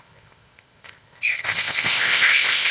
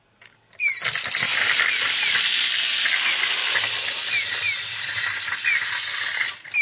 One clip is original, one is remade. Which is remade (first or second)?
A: first